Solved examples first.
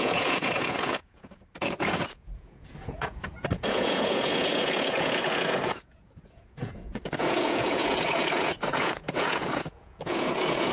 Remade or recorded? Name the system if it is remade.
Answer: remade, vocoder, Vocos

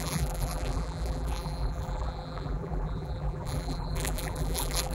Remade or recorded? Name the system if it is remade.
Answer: remade, vocoder, BigVGAN v2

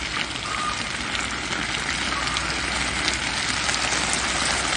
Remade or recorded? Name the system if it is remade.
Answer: recorded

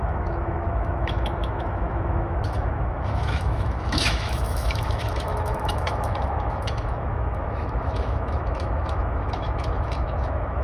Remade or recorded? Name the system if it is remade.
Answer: remade, autoencoder, DAC-VAE